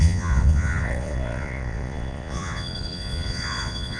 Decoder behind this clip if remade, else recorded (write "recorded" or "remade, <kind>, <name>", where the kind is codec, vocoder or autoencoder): remade, vocoder, Vocos